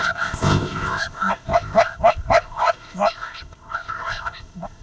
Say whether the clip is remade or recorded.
remade